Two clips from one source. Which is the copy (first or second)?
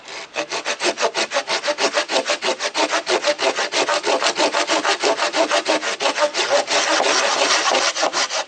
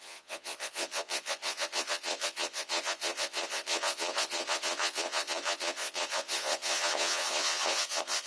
second